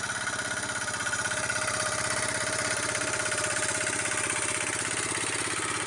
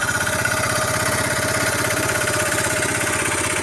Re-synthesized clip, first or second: second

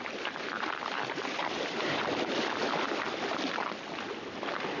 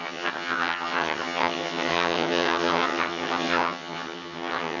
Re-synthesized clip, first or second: second